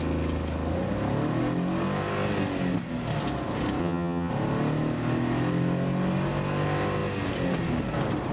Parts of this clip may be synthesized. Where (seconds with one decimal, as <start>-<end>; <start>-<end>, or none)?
3.8-4.3